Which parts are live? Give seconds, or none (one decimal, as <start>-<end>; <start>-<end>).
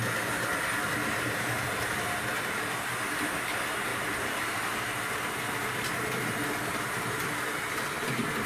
0.0-8.5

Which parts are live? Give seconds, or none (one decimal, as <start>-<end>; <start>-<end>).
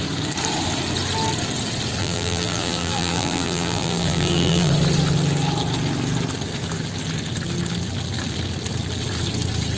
0.0-2.0; 4.7-9.8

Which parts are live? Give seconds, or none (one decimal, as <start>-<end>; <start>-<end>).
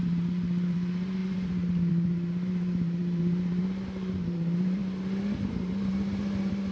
4.8-5.5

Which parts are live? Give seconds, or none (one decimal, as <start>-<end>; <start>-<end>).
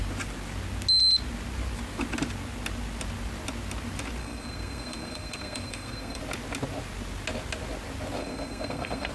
0.0-4.2; 6.2-8.2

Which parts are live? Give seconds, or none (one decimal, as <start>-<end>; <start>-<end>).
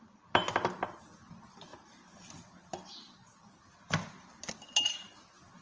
0.0-5.6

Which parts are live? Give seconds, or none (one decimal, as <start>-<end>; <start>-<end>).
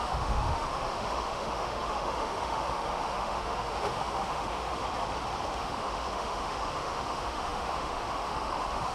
4.8-5.5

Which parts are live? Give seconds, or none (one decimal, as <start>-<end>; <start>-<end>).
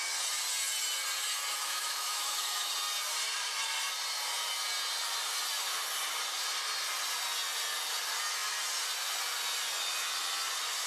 0.0-1.6; 2.7-10.9